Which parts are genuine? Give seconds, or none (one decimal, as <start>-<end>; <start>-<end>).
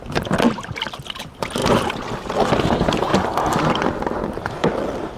0.0-5.2